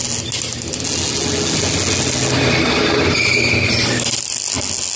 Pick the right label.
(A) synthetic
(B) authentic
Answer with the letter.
B